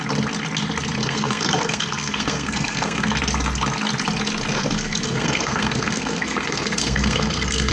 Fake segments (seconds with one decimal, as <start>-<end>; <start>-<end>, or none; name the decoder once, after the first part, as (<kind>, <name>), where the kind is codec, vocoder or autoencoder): 1.0-3.1 (codec, SNAC); 4.5-7.7